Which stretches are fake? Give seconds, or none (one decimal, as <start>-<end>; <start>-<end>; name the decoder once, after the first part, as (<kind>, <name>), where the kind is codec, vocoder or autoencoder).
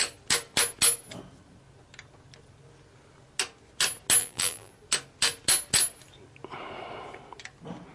4.2-4.7 (vocoder, BigVGAN v2)